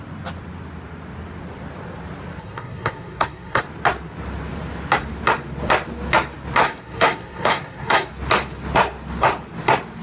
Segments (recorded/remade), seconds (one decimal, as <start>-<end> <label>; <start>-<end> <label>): 0.0-2.4 recorded; 2.4-3.6 remade; 3.6-6.6 recorded; 6.6-8.1 remade; 8.1-10.0 recorded